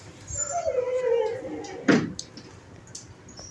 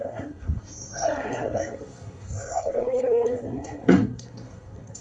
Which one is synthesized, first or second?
second